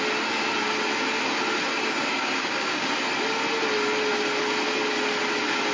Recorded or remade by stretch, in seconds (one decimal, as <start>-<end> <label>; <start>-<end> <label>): 0.0-1.7 recorded; 1.7-2.9 remade; 2.9-5.7 recorded